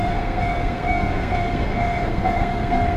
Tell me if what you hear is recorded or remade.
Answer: remade